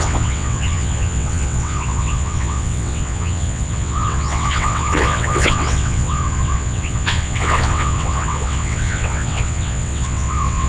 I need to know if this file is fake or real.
fake